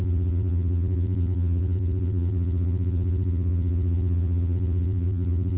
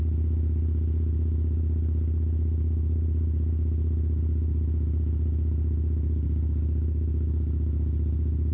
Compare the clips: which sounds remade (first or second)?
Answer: first